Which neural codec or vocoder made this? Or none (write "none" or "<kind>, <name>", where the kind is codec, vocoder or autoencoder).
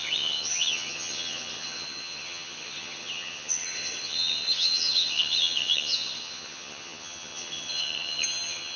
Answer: vocoder, HiFi-GAN